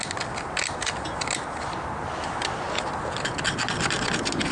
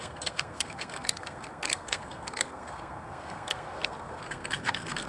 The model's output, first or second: second